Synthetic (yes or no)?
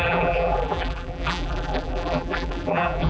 yes